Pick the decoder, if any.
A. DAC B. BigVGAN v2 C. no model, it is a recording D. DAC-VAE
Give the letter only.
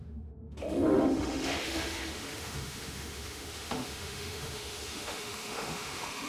D